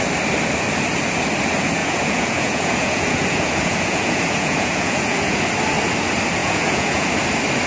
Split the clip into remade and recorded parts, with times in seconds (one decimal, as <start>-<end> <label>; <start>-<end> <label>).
0.0-1.8 recorded; 1.8-5.4 remade; 5.4-6.4 recorded; 6.4-7.1 remade; 7.1-7.7 recorded